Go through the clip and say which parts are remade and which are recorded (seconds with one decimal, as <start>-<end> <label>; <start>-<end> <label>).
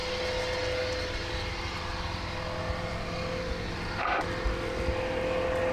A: 0.0-5.7 recorded